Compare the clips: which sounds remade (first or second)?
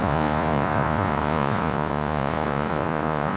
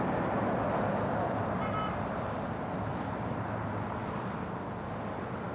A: first